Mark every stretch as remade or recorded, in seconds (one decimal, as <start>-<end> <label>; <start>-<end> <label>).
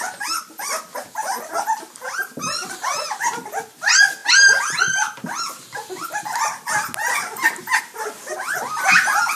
0.0-9.4 recorded